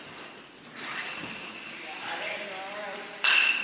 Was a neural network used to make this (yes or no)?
no